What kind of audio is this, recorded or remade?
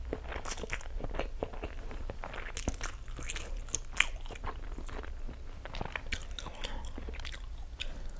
recorded